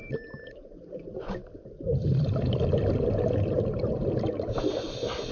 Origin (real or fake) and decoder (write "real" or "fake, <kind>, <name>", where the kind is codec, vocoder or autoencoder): fake, vocoder, BigVGAN v2